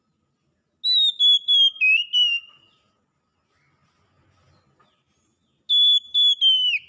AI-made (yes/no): no